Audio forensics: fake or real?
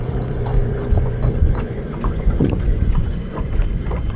fake